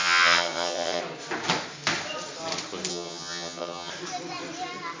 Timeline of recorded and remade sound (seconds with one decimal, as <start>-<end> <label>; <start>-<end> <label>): 0.0-1.0 remade; 1.0-2.9 recorded; 2.9-3.9 remade; 3.9-5.0 recorded